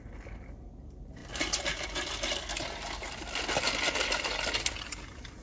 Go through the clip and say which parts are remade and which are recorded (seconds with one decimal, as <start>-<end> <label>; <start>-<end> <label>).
0.0-5.4 recorded